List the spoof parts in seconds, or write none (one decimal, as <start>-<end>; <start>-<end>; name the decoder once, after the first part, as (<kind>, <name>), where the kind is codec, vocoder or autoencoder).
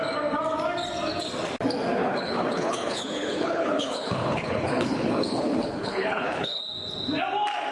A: 2.0-6.6 (codec, HILCodec)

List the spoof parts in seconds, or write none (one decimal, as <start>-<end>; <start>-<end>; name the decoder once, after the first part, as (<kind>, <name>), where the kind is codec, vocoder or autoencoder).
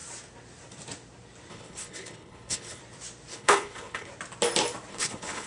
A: 1.5-2.8 (codec, HILCodec); 3.3-4.1; 4.9-5.5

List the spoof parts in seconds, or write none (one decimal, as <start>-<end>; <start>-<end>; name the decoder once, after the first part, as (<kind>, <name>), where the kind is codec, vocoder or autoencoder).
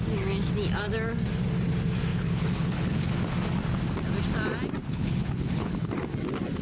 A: 2.1-3.1 (codec, HILCodec); 4.8-5.9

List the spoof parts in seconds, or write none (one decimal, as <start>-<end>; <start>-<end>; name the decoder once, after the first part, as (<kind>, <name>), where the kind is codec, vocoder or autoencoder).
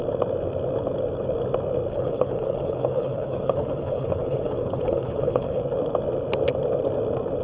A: 1.9-5.6 (codec, HILCodec)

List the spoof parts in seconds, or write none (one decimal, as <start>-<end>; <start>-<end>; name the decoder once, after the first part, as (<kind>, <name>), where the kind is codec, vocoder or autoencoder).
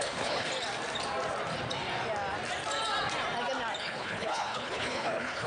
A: 0.0-0.5 (codec, HILCodec); 3.8-5.5